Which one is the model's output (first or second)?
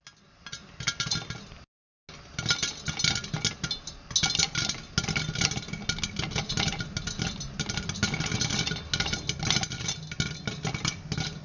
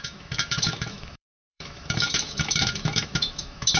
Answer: second